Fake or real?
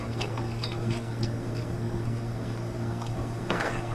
fake